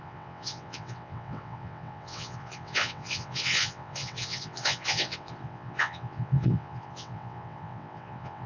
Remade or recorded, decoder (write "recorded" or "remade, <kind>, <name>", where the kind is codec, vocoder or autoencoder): remade, vocoder, WaveNeXt